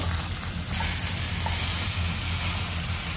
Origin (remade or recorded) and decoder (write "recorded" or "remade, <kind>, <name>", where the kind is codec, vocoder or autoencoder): recorded